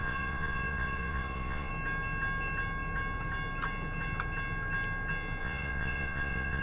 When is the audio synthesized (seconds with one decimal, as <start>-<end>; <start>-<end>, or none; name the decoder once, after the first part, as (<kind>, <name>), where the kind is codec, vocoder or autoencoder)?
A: 0.0-1.7 (vocoder, Vocos); 5.4-6.6